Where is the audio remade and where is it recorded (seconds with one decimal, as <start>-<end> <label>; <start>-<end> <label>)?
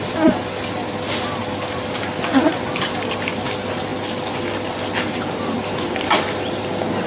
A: 0.0-7.1 recorded